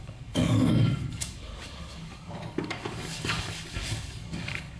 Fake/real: fake